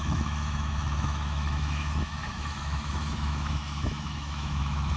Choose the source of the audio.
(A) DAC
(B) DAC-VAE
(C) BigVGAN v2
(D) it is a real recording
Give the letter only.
B